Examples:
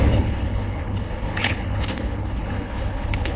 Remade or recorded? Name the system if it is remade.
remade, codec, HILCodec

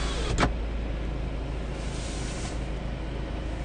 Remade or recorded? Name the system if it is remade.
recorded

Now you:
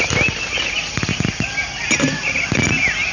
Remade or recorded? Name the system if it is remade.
recorded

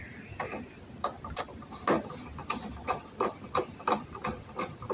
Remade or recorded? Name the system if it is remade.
recorded